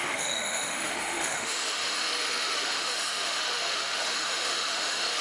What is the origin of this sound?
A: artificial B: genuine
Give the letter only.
A